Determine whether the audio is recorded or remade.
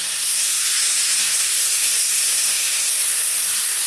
remade